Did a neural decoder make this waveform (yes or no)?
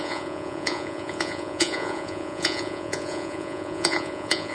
yes